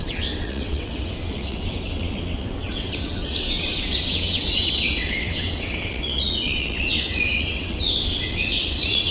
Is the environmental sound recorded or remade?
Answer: remade